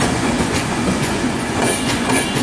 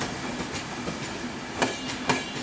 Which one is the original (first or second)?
second